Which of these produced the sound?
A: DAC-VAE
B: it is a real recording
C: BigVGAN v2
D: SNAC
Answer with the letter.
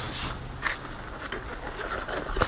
B